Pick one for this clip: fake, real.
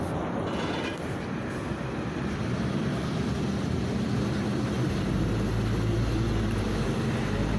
real